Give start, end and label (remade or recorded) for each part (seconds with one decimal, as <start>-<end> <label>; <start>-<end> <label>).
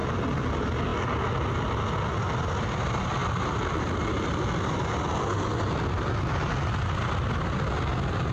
0.0-0.5 remade; 0.5-3.2 recorded; 3.2-7.5 remade; 7.5-8.3 recorded